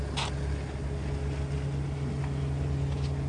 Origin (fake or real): real